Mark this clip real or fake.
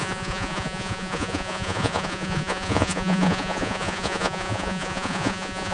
fake